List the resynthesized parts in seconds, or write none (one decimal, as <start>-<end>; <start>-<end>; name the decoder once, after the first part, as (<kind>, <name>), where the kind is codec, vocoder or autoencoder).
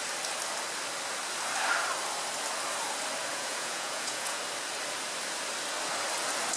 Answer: 3.3-4.4 (vocoder, Vocos)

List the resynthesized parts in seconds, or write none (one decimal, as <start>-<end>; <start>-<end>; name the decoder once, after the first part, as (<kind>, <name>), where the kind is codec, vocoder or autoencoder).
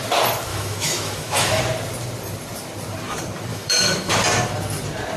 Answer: 0.5-1.6 (autoencoder, DAC-VAE); 3.5-4.1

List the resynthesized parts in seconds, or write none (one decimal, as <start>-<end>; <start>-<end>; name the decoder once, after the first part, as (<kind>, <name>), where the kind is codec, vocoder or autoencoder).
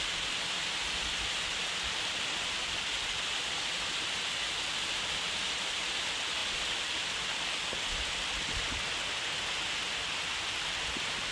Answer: none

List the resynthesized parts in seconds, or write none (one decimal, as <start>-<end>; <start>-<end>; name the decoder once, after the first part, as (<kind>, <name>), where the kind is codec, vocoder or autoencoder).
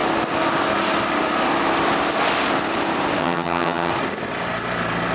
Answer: 3.2-3.9 (vocoder, HiFi-GAN)